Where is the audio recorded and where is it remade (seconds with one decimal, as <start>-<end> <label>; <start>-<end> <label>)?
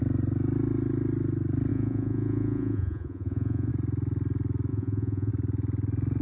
0.0-1.7 recorded; 1.7-3.7 remade; 3.7-4.7 recorded; 4.7-5.3 remade; 5.3-6.2 recorded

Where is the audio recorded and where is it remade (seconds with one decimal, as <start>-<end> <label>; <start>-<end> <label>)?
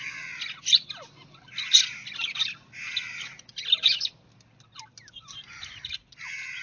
0.0-6.6 recorded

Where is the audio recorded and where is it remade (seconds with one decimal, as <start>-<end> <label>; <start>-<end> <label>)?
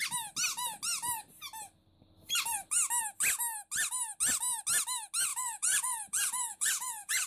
0.0-5.3 recorded; 5.3-7.3 remade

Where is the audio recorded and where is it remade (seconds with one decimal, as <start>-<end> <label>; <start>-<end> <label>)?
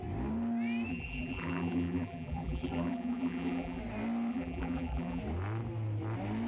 0.0-0.9 recorded; 0.9-3.8 remade; 3.8-4.3 recorded; 4.3-5.2 remade; 5.2-6.5 recorded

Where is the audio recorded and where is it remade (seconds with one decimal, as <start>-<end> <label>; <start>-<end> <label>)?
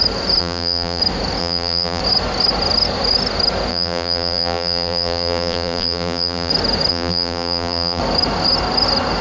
0.0-0.4 recorded; 0.4-1.0 remade; 1.0-1.4 recorded; 1.4-2.0 remade; 2.0-3.7 recorded; 3.7-6.5 remade; 6.5-6.9 recorded; 6.9-8.0 remade; 8.0-9.2 recorded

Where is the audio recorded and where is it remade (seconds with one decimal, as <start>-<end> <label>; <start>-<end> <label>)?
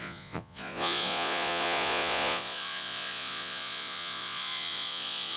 0.0-5.4 remade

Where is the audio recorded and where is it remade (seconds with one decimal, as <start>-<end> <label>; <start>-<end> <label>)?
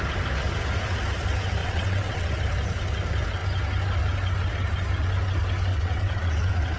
0.0-1.6 recorded; 1.6-2.3 remade; 2.3-5.7 recorded; 5.7-6.8 remade